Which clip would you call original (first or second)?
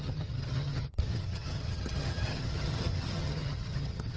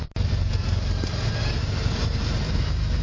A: second